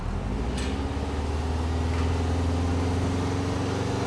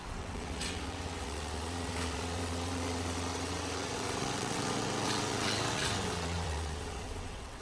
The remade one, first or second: second